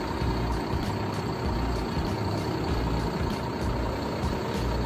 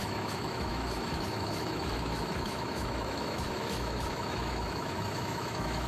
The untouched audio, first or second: first